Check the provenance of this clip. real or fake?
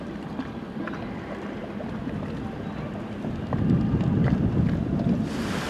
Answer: real